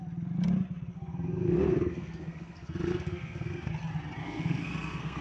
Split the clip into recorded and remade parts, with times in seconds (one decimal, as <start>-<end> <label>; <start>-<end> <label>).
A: 0.0-0.9 recorded; 0.9-3.7 remade; 3.7-4.2 recorded; 4.2-5.2 remade